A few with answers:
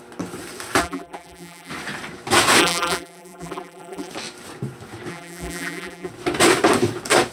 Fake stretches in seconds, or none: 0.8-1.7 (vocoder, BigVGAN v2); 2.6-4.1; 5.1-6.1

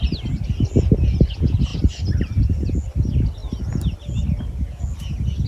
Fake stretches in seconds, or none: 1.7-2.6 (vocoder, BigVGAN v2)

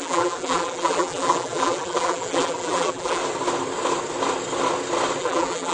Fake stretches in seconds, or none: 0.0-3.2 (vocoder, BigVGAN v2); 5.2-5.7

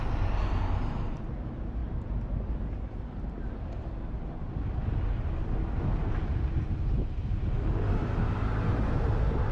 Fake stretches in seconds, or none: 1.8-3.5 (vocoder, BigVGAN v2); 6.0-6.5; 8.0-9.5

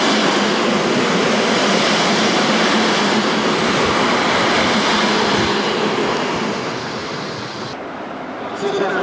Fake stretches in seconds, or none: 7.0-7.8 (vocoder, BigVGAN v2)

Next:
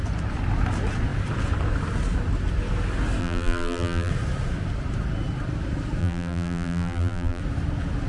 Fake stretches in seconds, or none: 3.2-4.1 (vocoder, BigVGAN v2); 6.0-7.4